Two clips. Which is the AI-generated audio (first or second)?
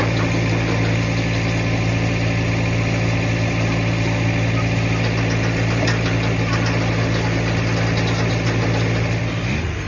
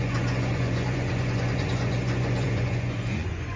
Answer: second